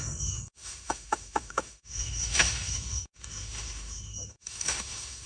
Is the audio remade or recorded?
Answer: remade